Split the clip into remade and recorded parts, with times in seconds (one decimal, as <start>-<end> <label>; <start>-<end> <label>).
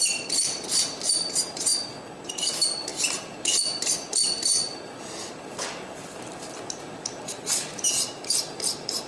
0.0-1.7 remade; 1.7-2.5 recorded; 2.5-9.1 remade